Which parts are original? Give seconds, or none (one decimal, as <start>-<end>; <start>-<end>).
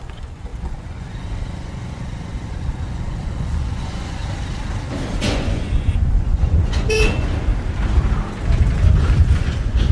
4.2-5.2; 7.5-9.2